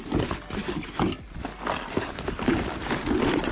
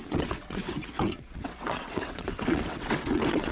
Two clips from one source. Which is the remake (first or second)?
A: second